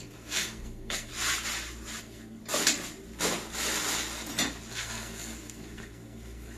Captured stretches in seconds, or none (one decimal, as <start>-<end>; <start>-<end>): 1.1-2.0; 2.4-4.7